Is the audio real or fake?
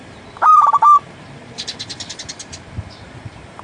fake